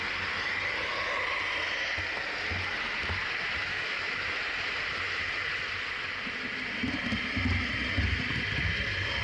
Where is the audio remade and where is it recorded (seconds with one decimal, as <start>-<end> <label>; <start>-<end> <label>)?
0.0-3.6 recorded; 3.6-4.1 remade; 4.1-9.2 recorded